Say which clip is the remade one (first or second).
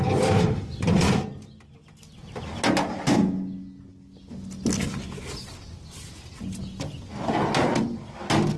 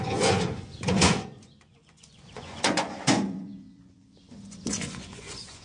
second